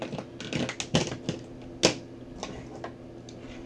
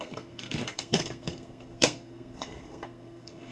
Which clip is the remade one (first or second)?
second